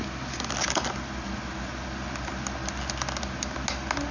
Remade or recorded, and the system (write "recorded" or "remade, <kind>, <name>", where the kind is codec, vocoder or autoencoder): recorded